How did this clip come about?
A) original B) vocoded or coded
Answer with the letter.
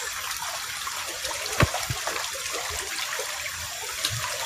B